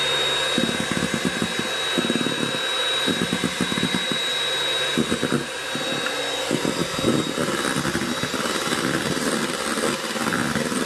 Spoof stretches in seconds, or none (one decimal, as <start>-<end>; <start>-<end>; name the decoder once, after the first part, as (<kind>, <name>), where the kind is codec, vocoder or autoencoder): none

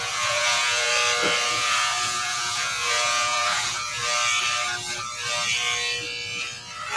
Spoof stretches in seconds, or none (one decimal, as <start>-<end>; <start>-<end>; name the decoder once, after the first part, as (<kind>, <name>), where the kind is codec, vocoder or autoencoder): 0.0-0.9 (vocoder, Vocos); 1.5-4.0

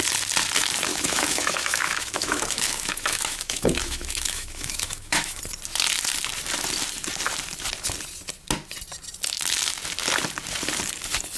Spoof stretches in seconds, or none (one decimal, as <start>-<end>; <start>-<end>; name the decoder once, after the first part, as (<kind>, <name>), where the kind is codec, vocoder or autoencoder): 0.9-5.4 (autoencoder, DAC-VAE)